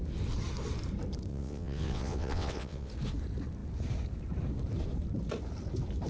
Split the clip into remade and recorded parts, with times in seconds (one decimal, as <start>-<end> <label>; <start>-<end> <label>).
0.0-1.3 recorded; 1.3-2.9 remade; 2.9-6.1 recorded